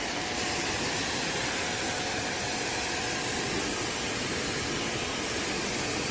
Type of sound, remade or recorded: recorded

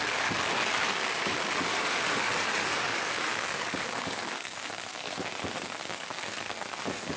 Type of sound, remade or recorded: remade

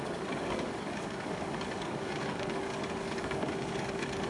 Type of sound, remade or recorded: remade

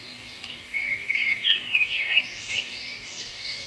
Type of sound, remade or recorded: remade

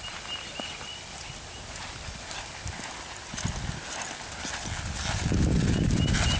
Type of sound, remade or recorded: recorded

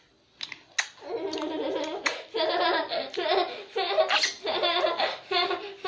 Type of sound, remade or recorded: recorded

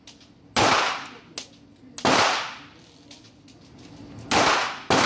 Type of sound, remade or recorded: recorded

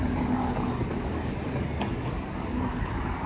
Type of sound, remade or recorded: remade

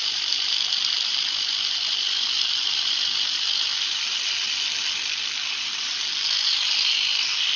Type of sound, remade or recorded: recorded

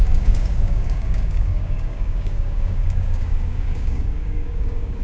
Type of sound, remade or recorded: remade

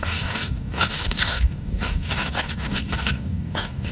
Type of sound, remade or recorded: remade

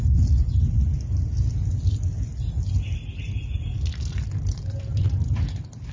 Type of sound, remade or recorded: recorded